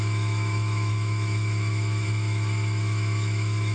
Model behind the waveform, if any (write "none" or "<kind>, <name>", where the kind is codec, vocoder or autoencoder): autoencoder, DAC-VAE